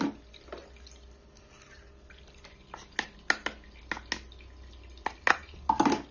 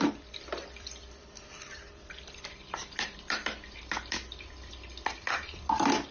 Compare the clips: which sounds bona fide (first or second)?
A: first